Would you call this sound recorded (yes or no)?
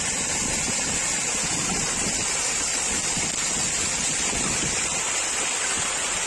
yes